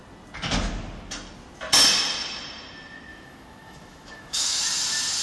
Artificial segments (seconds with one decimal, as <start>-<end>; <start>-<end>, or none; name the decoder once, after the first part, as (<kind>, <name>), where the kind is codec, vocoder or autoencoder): 3.1-4.6 (autoencoder, DAC-VAE)